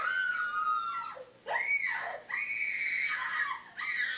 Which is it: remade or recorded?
recorded